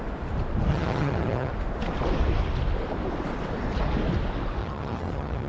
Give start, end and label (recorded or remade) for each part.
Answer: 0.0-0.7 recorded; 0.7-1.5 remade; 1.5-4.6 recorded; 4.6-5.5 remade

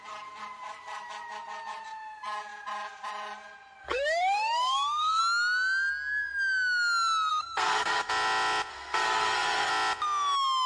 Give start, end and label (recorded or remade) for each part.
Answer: 0.0-3.8 recorded; 3.8-5.2 remade; 5.2-7.3 recorded; 7.3-8.1 remade; 8.1-8.7 recorded; 8.7-9.7 remade; 9.7-10.7 recorded

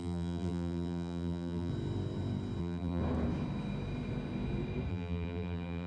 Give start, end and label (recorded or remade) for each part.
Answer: 0.0-1.7 remade; 1.7-2.6 recorded; 2.6-3.0 remade; 3.0-4.9 recorded; 4.9-5.9 remade